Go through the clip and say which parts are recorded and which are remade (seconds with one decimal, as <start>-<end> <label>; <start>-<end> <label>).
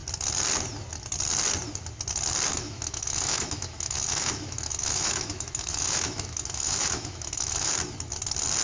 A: 0.0-2.5 recorded; 2.5-7.7 remade; 7.7-8.6 recorded